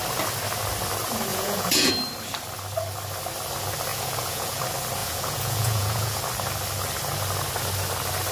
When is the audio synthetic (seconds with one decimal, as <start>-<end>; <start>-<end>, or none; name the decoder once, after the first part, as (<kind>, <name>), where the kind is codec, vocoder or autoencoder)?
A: 1.3-1.9 (vocoder, Vocos); 3.9-4.6; 5.0-6.2

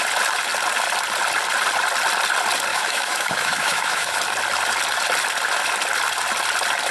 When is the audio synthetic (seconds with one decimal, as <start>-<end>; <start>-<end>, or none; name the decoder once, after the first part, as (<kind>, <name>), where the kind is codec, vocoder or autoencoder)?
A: 2.7-4.2 (autoencoder, DAC-VAE)

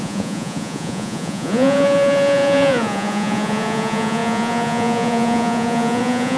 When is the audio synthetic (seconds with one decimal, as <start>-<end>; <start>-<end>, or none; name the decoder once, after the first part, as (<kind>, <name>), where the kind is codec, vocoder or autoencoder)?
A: 0.0-6.4 (vocoder, Vocos)